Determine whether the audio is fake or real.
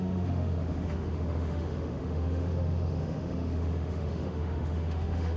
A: fake